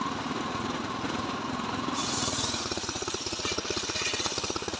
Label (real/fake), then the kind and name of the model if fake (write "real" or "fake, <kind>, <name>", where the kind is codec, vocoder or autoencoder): fake, vocoder, Vocos